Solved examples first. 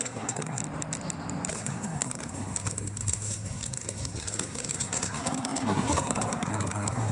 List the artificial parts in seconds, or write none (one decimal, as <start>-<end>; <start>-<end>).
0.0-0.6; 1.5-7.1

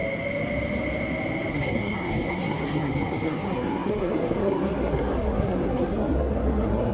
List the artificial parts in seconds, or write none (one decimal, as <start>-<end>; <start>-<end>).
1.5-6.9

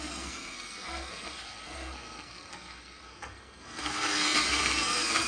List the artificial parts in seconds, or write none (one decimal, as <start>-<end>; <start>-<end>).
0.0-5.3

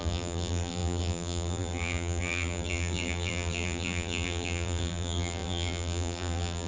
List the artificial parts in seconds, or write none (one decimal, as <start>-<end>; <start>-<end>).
0.0-6.7